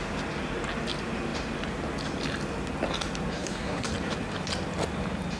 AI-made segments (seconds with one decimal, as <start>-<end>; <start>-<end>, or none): 3.3-3.9